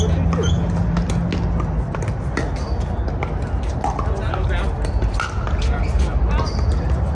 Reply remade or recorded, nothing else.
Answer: recorded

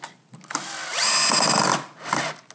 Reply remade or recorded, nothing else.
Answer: recorded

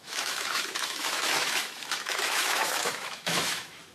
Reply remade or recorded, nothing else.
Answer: remade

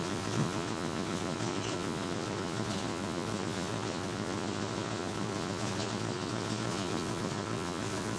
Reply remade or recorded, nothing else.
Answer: remade